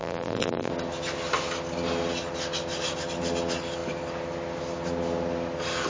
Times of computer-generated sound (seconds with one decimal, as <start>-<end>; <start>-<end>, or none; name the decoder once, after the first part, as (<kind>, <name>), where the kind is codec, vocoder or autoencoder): 0.0-0.7 (vocoder, BigVGAN v2)